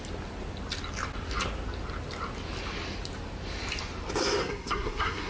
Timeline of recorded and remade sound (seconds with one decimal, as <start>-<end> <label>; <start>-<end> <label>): 0.0-4.4 recorded; 4.4-5.3 remade